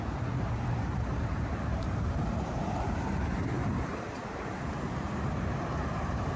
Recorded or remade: remade